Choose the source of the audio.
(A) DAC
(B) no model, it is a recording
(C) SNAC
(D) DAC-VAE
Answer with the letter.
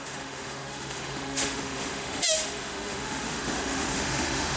D